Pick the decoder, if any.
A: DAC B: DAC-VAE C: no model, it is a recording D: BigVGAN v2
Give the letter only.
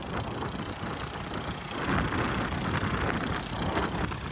C